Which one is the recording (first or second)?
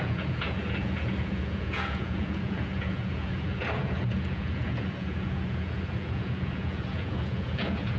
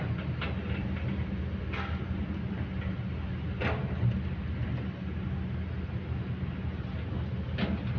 second